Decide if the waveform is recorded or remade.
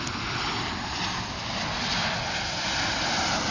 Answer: recorded